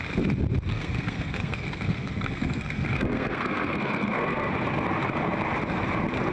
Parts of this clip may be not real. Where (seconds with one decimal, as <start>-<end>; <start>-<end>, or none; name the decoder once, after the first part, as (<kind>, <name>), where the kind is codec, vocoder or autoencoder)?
0.7-4.5 (codec, SNAC)